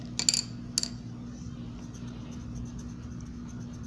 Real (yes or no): yes